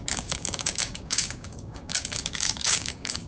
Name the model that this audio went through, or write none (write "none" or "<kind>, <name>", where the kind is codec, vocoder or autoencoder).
codec, DAC